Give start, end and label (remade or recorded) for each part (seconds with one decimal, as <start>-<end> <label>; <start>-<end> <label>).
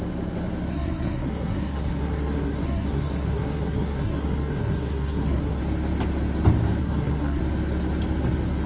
0.0-0.7 recorded; 0.7-5.6 remade; 5.6-6.8 recorded; 6.8-7.4 remade; 7.4-8.7 recorded